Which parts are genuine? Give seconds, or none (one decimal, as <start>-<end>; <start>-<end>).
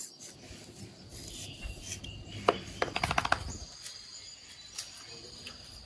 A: 0.0-5.9